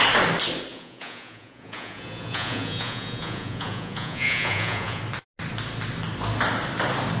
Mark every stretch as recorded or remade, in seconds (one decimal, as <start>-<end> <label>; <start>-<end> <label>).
0.0-0.7 recorded; 0.7-5.0 remade; 5.0-7.2 recorded